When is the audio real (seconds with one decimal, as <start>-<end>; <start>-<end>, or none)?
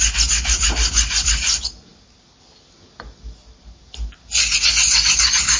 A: 0.0-5.6